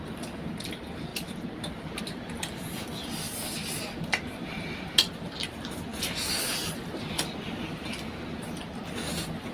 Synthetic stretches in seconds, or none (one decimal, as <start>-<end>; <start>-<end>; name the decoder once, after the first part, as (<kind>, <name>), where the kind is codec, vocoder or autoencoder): none